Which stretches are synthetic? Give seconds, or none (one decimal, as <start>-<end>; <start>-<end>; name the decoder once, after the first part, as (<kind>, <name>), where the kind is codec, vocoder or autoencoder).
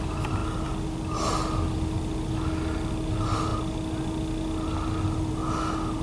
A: none